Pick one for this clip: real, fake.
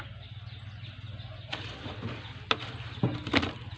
real